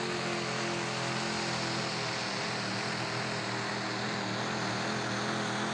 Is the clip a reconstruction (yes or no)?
no